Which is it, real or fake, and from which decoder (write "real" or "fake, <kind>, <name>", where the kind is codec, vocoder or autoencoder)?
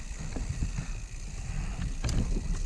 real